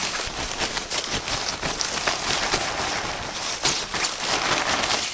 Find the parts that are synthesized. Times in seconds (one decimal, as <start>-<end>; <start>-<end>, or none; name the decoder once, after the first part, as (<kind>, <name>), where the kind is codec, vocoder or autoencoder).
3.1-5.1 (vocoder, BigVGAN v2)